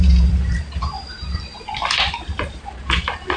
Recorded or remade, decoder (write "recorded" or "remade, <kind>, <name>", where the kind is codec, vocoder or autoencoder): remade, vocoder, BigVGAN v2